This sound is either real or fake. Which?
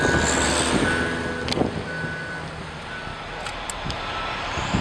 real